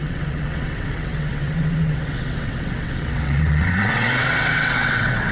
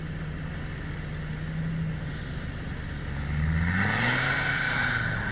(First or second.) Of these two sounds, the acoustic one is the second